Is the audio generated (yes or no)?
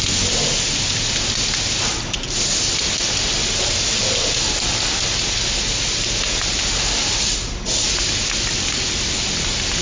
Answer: no